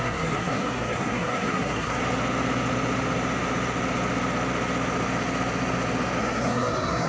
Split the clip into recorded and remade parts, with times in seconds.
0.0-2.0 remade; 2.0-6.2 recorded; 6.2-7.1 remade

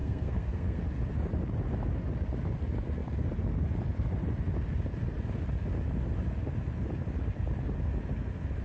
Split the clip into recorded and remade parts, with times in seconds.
0.0-0.8 remade; 0.8-8.6 recorded

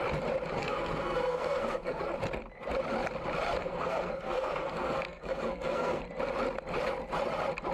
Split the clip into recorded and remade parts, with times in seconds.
0.0-0.6 recorded; 0.6-2.0 remade; 2.0-3.6 recorded; 3.6-6.0 remade; 6.0-7.7 recorded